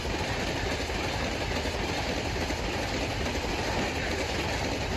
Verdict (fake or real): real